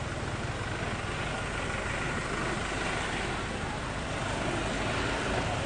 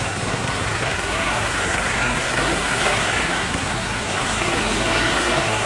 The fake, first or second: second